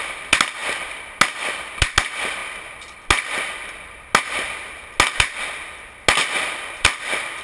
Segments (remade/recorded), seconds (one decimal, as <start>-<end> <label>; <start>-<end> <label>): 0.0-7.4 recorded